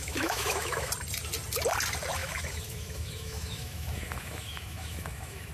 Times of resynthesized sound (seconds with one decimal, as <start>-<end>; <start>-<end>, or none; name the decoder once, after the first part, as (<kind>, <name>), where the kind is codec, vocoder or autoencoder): 0.0-0.9 (autoencoder, DAC-VAE); 2.2-5.5